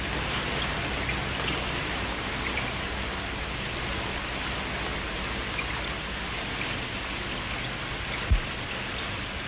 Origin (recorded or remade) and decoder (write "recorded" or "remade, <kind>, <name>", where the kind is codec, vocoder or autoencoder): recorded